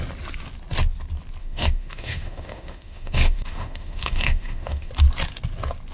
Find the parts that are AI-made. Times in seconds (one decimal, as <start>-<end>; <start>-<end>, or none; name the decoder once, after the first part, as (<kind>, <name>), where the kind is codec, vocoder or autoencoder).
1.4-4.9 (autoencoder, DAC-VAE)

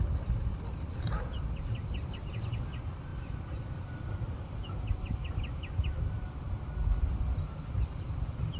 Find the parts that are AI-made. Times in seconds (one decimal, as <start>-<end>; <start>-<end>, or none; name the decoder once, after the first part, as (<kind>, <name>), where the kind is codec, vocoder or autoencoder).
none

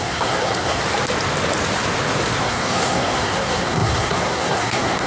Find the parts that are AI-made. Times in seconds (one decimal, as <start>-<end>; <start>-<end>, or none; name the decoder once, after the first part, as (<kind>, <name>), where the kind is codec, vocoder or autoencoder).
0.0-0.8 (codec, SNAC); 2.4-5.1

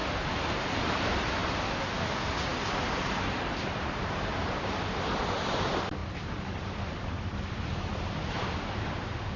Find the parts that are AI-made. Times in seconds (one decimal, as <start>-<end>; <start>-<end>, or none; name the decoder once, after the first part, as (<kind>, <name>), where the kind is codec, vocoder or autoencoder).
0.5-1.4 (vocoder, BigVGAN v2); 1.9-6.0; 6.5-9.4

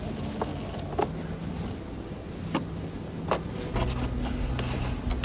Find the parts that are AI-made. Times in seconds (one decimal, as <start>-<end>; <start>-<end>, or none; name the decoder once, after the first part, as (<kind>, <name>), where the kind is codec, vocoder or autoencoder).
none

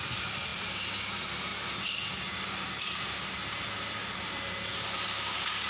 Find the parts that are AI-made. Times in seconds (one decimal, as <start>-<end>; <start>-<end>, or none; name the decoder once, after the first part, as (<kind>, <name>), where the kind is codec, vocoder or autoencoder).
none

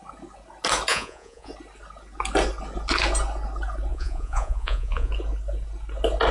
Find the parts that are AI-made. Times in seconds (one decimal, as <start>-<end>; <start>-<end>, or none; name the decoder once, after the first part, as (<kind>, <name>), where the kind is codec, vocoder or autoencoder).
0.9-1.5 (vocoder, Vocos); 3.9-5.1

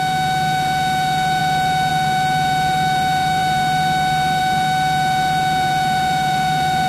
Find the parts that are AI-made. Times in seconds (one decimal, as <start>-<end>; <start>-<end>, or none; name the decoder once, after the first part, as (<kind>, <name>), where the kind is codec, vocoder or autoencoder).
0.0-3.4 (vocoder, Vocos); 4.4-6.9